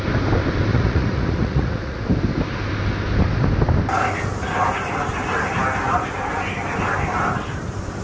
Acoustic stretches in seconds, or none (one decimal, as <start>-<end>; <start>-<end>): 0.0-0.7; 2.0-8.0